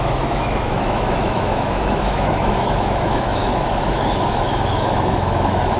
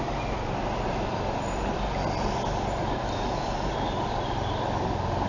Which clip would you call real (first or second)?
second